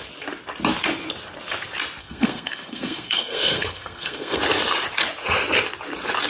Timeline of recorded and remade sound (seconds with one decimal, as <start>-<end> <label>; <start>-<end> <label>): 0.0-2.0 recorded; 2.0-4.4 remade; 4.4-6.3 recorded